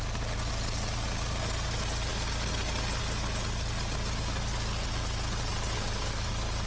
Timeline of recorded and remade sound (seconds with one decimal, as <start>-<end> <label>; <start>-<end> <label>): 0.0-5.5 recorded; 5.5-6.3 remade; 6.3-6.7 recorded